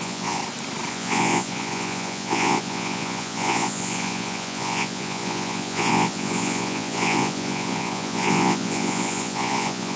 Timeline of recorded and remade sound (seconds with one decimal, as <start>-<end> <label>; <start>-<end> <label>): 0.0-0.4 remade; 0.4-0.9 recorded; 0.9-10.0 remade